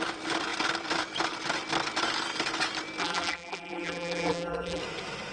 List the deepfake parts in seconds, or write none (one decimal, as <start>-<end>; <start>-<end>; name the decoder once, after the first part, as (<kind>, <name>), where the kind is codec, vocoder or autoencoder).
3.0-4.8 (vocoder, BigVGAN v2)